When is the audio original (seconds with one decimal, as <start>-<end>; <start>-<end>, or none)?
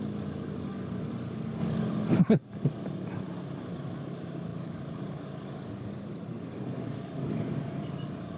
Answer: 2.8-4.1